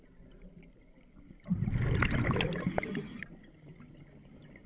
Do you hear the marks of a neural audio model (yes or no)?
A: no